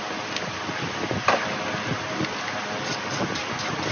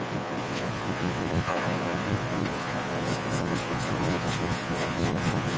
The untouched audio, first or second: first